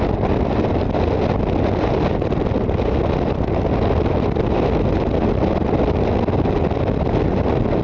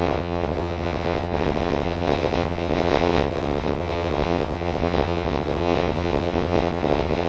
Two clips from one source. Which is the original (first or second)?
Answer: first